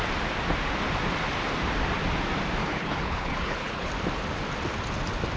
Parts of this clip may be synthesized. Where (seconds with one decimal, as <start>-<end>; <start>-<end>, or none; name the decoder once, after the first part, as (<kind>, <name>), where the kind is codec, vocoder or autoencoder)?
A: 2.6-3.9 (codec, HILCodec)